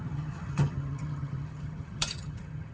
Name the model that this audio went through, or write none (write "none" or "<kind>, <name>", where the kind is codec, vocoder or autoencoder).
vocoder, HiFi-GAN